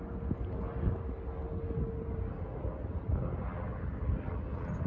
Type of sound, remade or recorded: recorded